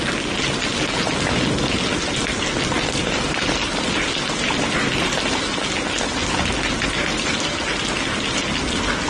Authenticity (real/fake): real